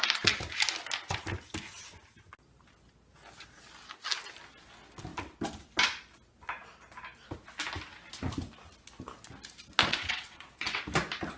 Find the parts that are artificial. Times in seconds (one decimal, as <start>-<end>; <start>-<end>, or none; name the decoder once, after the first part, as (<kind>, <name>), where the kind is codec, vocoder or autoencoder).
9.9-10.8 (vocoder, WaveNeXt)